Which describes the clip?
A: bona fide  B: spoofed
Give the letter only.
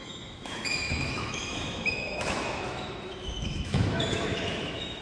B